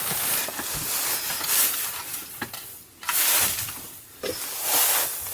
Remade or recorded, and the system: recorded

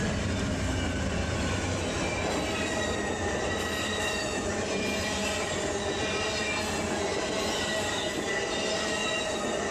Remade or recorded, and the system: recorded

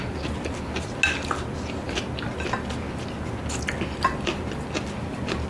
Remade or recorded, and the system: recorded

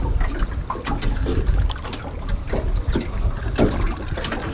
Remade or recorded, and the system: recorded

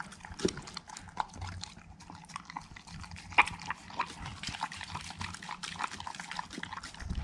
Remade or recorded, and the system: recorded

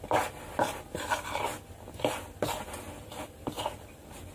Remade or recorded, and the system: recorded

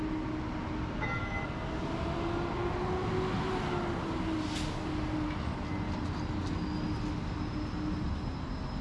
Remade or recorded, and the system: recorded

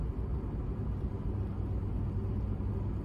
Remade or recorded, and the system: recorded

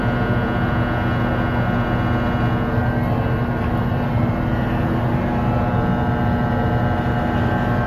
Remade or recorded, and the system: recorded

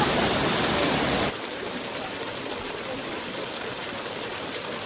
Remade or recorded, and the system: remade, vocoder, BigVGAN v2